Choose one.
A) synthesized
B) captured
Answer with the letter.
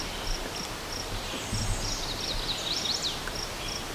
B